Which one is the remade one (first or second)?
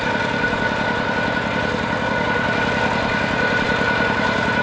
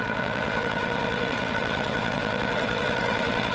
second